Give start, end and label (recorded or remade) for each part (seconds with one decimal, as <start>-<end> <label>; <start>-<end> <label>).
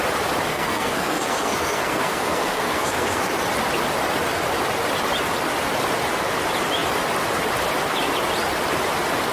0.0-0.5 recorded; 0.5-3.3 remade; 3.3-9.3 recorded